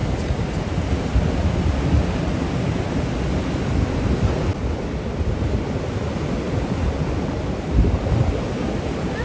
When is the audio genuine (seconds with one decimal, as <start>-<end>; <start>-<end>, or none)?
0.0-9.2